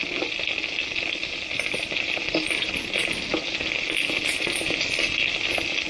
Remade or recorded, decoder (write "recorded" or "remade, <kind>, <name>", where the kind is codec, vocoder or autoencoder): recorded